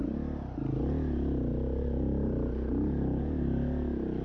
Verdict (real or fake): real